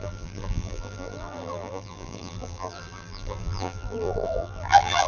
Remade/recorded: remade